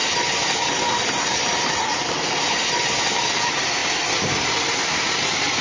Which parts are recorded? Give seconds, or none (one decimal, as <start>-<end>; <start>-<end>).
0.0-5.6